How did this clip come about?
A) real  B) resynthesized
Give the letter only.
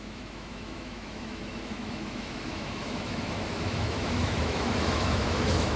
B